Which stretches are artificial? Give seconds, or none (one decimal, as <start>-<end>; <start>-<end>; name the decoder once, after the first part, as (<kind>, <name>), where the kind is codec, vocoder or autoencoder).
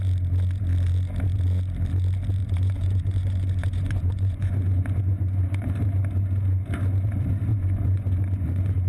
2.4-5.7 (vocoder, Vocos); 7.5-8.9